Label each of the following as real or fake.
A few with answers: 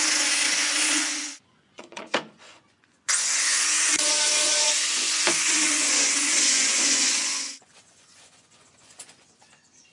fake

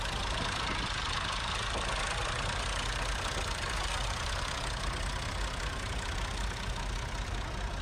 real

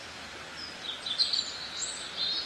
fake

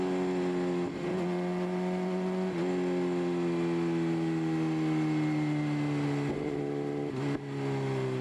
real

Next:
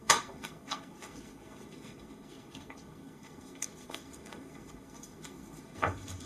fake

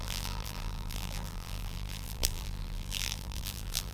fake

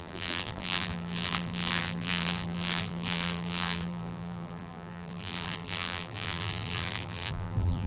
fake